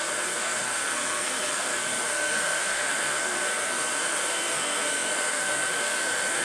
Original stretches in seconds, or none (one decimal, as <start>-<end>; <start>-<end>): none